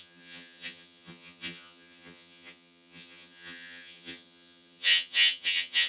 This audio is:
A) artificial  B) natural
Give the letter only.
A